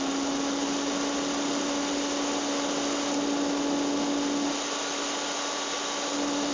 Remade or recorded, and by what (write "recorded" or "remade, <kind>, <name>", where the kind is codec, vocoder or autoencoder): recorded